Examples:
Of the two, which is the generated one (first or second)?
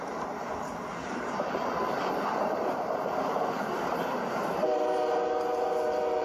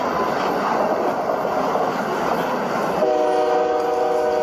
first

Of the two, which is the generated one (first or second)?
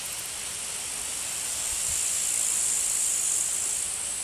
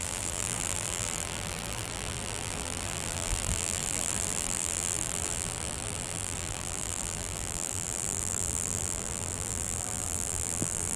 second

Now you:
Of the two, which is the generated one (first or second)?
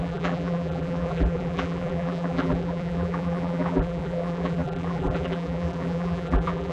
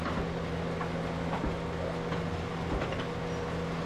first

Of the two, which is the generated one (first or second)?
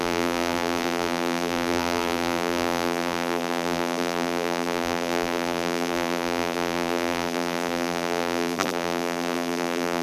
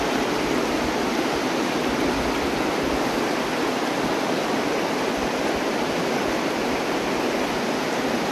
first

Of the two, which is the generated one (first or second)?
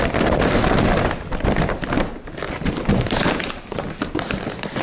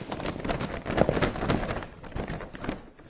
first